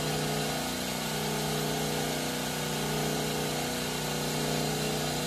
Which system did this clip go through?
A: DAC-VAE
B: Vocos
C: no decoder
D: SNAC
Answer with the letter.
C